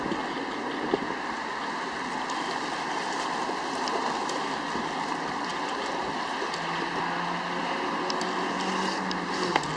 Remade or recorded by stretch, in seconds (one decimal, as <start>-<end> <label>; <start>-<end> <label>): 0.0-9.8 recorded